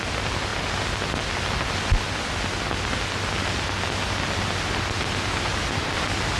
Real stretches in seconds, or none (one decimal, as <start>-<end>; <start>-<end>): 0.0-6.4

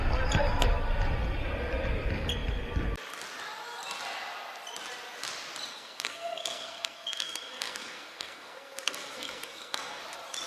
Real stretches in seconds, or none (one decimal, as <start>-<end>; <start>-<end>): 0.0-5.7; 10.0-10.5

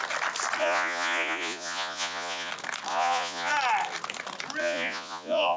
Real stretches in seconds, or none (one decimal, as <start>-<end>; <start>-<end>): 0.0-0.6; 2.5-2.9; 3.5-4.6

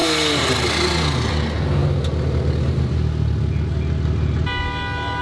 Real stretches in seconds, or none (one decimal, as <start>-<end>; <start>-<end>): 0.0-5.2

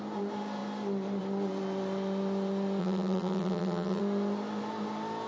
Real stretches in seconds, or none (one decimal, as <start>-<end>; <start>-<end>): 0.0-2.8; 4.0-5.3